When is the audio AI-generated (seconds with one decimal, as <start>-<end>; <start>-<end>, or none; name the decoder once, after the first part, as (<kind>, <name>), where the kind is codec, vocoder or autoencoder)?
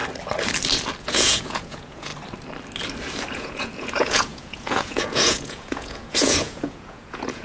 1.0-2.1 (vocoder, Vocos); 3.3-7.4